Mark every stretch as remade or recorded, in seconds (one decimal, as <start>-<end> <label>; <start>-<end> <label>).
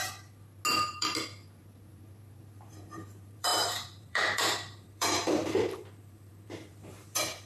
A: 0.0-0.9 recorded; 0.9-7.5 remade